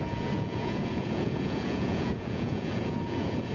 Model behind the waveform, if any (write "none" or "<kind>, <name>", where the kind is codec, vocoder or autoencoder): vocoder, Vocos